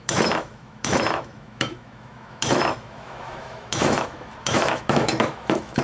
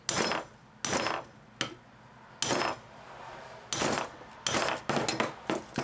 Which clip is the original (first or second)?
second